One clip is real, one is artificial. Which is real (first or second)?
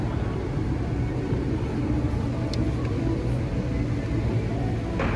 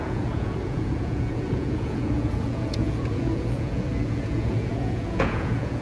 first